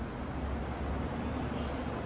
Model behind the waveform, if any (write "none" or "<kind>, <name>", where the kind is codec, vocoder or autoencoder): none